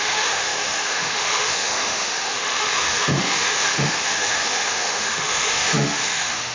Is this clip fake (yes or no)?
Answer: yes